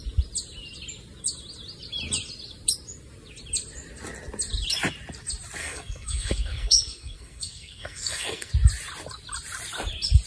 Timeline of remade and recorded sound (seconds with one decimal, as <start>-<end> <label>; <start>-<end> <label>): 0.0-5.6 recorded; 5.6-8.5 remade; 8.5-10.3 recorded